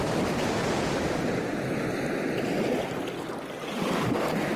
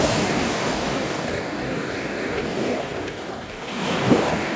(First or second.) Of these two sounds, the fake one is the second